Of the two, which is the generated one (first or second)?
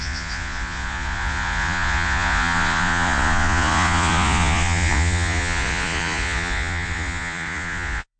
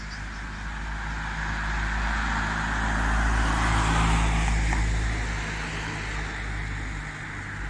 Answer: first